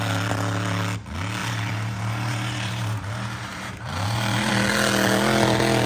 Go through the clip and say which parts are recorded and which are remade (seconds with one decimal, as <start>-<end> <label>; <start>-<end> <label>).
0.0-1.4 recorded; 1.4-4.5 remade; 4.5-5.9 recorded